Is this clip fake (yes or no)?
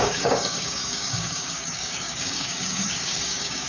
yes